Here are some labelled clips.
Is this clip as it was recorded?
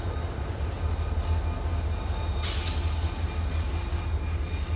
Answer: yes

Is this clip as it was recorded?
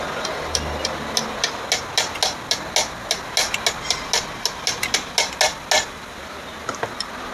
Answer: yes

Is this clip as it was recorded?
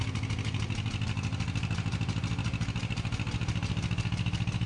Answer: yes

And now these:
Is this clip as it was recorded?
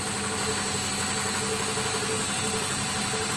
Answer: yes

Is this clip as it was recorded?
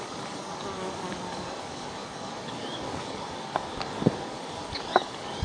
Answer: no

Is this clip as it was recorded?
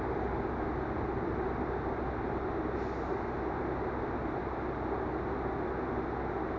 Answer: yes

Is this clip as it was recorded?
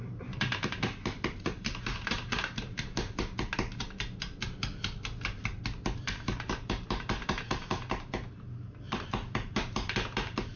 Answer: no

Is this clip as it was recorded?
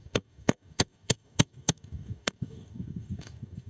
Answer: no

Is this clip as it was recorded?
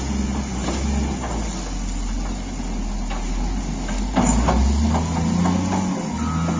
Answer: yes